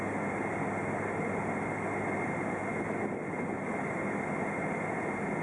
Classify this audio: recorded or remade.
recorded